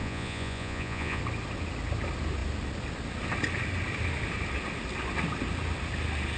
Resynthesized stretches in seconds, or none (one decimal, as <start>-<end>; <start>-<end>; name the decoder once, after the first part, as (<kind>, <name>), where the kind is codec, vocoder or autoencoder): 0.0-1.2 (vocoder, Vocos)

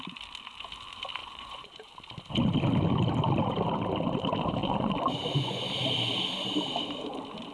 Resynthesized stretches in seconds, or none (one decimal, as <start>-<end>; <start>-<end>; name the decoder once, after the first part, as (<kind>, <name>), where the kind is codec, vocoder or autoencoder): 1.2-1.9 (vocoder, Vocos); 4.6-5.6